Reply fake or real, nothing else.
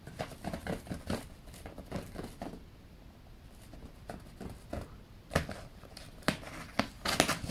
real